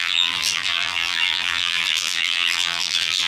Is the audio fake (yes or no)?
yes